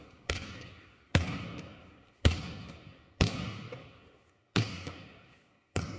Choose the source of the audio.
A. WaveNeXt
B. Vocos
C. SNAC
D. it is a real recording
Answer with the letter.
C